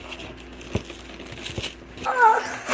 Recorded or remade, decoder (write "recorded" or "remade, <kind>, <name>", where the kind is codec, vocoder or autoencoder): recorded